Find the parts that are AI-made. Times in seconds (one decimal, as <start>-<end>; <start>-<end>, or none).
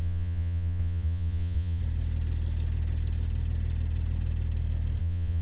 0.0-1.8; 5.0-5.4